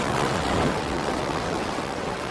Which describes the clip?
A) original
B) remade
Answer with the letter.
B